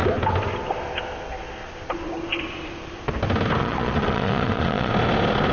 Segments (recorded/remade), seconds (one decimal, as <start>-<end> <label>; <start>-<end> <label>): 0.0-3.6 recorded; 3.6-4.9 remade; 4.9-5.5 recorded